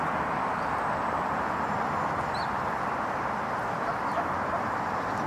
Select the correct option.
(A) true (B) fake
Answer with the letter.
A